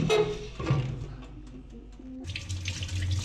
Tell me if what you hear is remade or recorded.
recorded